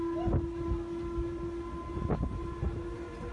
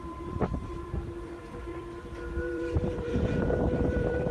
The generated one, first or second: second